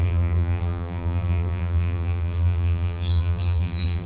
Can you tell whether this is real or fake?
fake